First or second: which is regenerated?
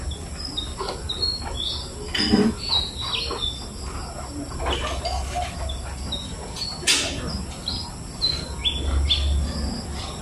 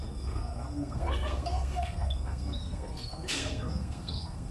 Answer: second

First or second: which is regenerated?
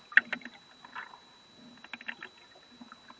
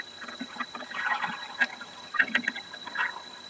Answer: second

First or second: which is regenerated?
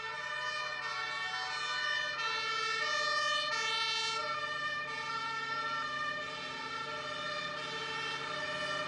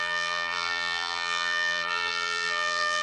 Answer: second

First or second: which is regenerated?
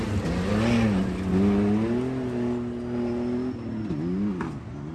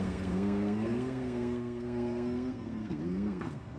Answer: second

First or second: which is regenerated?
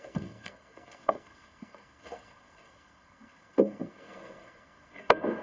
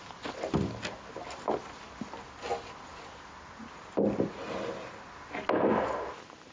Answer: first